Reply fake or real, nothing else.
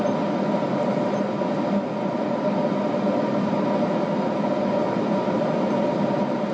real